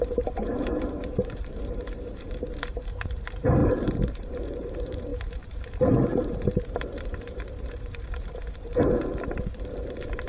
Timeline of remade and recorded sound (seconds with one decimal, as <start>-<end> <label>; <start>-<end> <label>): 0.0-10.3 remade